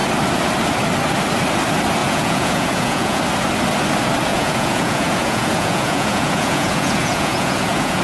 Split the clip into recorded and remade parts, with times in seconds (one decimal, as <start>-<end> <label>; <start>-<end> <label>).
0.0-2.0 recorded; 2.0-3.2 remade; 3.2-4.3 recorded; 4.3-8.0 remade